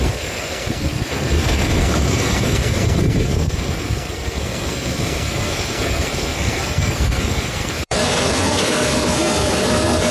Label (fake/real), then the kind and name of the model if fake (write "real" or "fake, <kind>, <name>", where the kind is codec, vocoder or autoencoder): fake, codec, SNAC